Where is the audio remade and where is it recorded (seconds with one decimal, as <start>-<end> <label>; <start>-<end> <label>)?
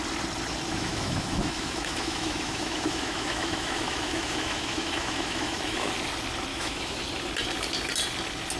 0.0-0.7 recorded; 0.7-5.9 remade; 5.9-6.5 recorded; 6.5-7.0 remade; 7.0-8.6 recorded